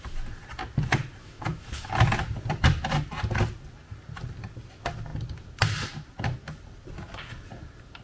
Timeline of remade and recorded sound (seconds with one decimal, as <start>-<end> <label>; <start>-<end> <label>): 0.0-1.2 recorded; 1.2-1.9 remade; 1.9-8.0 recorded